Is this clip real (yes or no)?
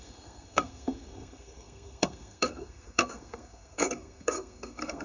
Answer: no